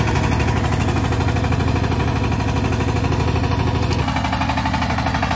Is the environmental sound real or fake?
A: real